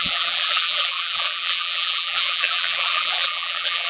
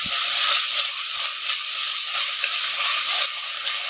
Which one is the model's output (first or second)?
first